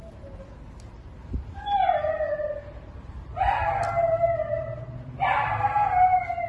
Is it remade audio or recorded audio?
recorded